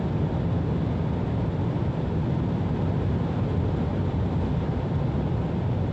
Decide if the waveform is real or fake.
real